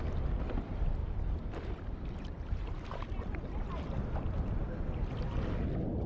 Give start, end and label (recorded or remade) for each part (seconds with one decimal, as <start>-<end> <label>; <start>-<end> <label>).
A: 0.0-6.1 recorded